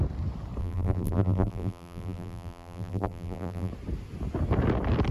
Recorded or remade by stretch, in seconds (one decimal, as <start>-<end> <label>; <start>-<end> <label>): 0.0-0.6 recorded; 0.6-3.7 remade; 3.7-5.1 recorded